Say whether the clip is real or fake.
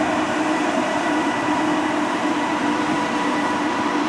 fake